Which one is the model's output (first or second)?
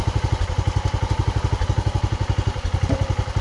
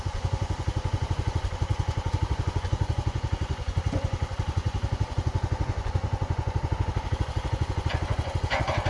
second